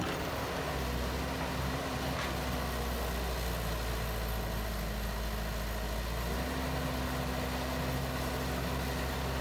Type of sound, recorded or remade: recorded